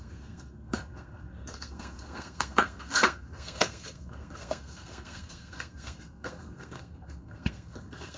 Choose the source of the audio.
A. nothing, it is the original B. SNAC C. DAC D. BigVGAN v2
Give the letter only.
B